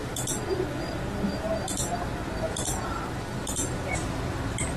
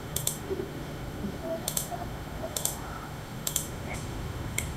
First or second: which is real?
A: first